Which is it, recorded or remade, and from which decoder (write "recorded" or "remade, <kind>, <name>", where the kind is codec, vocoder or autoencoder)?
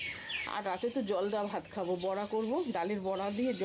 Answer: recorded